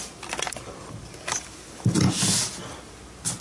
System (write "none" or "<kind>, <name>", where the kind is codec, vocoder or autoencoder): none